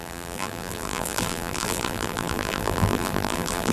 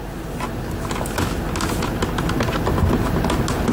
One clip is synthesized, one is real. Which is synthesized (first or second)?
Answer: first